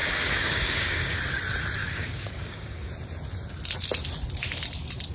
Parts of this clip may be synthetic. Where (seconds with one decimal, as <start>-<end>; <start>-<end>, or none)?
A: 0.0-1.2; 1.8-2.9